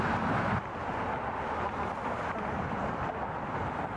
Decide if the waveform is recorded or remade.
recorded